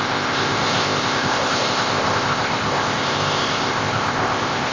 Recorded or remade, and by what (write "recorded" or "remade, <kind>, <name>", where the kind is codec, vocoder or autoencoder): remade, codec, ZipCodec